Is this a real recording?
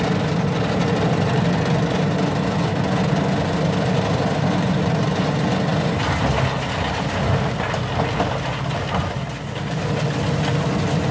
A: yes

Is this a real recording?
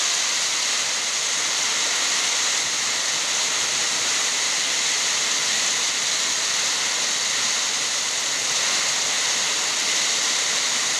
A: yes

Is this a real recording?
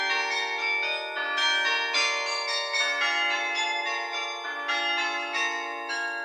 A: yes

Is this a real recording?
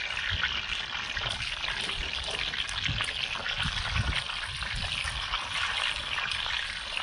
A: yes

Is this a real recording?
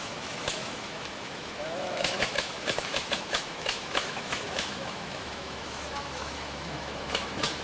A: no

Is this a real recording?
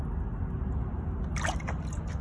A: yes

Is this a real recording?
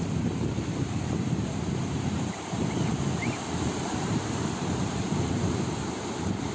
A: no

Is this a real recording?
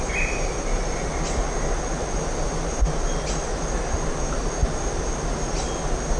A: yes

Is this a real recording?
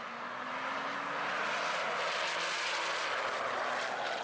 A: yes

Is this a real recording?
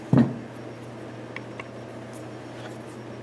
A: yes